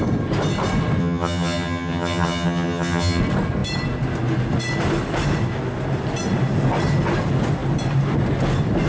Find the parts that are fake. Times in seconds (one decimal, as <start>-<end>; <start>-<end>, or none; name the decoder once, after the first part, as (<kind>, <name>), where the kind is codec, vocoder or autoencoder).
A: 1.0-3.2 (vocoder, HiFi-GAN)